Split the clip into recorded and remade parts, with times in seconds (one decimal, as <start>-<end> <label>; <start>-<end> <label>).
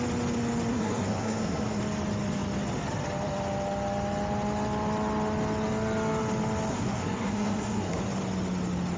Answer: 0.0-0.7 recorded; 0.7-1.8 remade; 1.8-6.7 recorded; 6.7-8.0 remade; 8.0-9.0 recorded